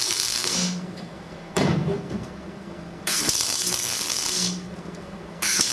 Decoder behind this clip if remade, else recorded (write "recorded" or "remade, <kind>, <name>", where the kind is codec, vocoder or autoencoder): remade, codec, SNAC